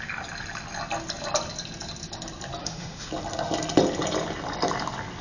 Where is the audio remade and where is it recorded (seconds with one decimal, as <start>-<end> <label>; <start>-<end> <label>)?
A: 0.0-2.6 recorded; 2.6-3.1 remade; 3.1-5.2 recorded